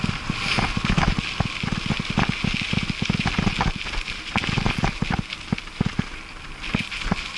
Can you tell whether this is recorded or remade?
recorded